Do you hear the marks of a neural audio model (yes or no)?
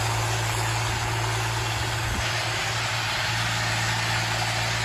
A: no